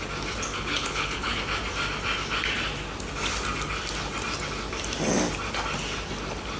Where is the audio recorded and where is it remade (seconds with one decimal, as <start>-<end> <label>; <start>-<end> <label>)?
0.0-0.5 recorded; 0.5-1.4 remade; 1.4-6.6 recorded